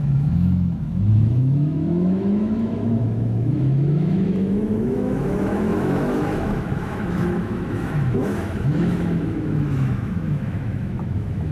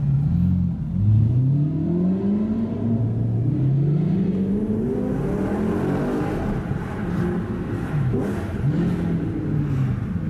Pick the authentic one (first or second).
second